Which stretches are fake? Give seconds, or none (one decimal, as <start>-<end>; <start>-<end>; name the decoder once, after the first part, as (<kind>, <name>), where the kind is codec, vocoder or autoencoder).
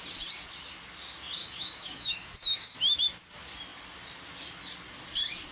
1.4-3.0 (autoencoder, DAC-VAE)